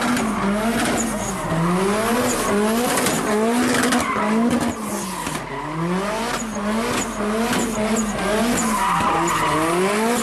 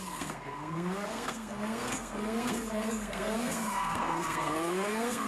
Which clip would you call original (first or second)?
first